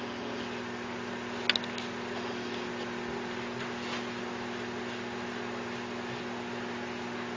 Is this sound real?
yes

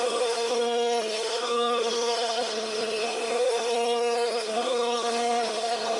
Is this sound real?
no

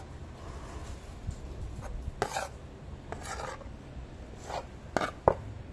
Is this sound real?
yes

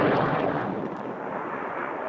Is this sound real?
no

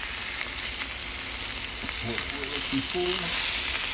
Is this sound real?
yes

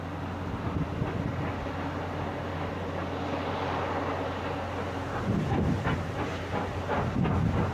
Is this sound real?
yes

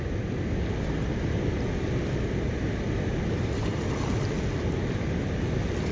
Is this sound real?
yes